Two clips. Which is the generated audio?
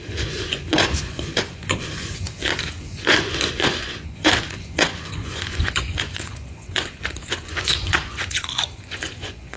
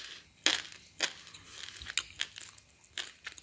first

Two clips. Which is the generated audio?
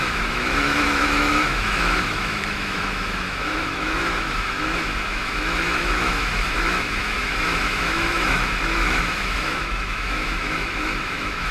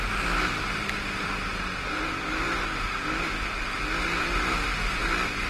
first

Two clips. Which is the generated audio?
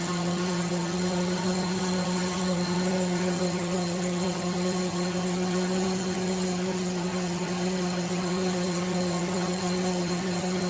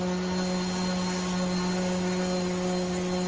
first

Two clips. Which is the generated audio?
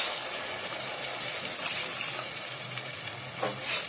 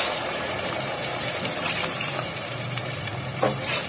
second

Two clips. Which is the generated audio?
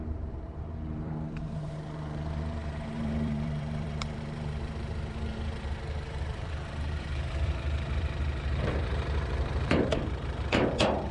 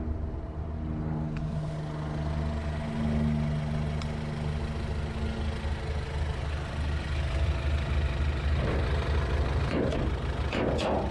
first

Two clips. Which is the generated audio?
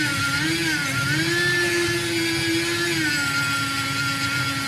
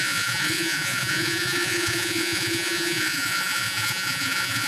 second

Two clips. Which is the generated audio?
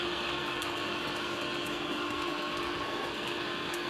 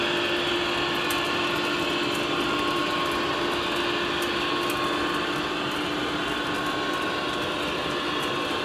first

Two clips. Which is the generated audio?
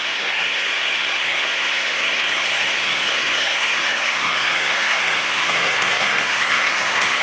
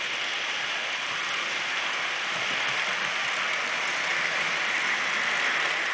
first